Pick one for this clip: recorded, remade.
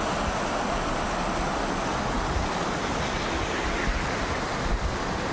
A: recorded